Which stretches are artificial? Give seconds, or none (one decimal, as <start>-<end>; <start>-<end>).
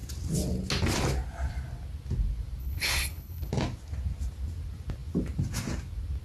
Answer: 2.6-3.5